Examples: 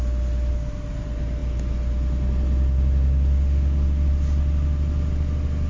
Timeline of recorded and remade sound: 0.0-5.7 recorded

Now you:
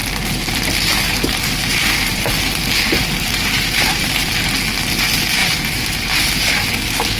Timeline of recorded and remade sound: 0.0-4.3 remade; 4.3-5.4 recorded; 5.4-6.4 remade; 6.4-7.2 recorded